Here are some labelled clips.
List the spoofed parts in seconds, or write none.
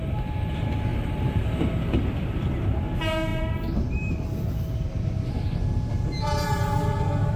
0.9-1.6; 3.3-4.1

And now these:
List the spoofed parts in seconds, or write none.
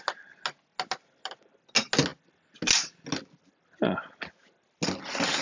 none